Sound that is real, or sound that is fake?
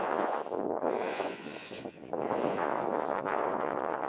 fake